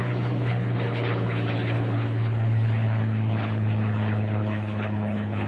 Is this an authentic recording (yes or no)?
no